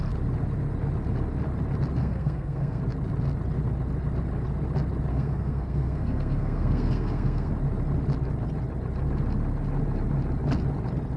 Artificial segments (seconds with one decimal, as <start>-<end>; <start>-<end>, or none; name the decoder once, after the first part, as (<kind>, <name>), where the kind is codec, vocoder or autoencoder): 2.0-2.8 (codec, SNAC); 5.1-7.5